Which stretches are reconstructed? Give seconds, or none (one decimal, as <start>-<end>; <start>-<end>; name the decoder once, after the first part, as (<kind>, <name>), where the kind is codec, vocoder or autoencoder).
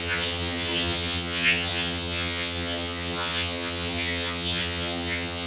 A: 0.0-5.5 (vocoder, HiFi-GAN)